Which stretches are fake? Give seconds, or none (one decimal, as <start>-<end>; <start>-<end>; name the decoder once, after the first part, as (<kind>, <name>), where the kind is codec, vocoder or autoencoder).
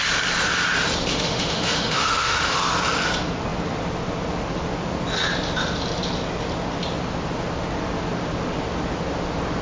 1.1-2.6 (autoencoder, DAC-VAE)